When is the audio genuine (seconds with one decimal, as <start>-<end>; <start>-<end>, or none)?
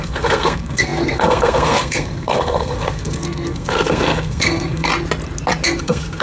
4.9-5.8